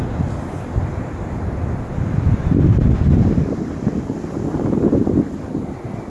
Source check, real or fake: real